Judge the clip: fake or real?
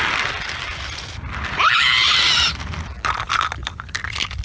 fake